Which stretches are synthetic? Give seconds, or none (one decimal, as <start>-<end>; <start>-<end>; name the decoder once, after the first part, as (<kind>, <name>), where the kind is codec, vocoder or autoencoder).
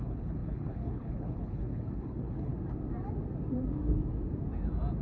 0.0-2.5 (codec, HILCodec)